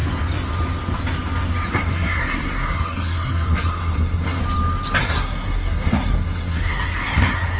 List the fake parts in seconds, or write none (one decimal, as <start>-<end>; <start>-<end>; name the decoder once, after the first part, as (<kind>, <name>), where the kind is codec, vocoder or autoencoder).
1.7-4.4 (codec, SNAC); 5.0-7.6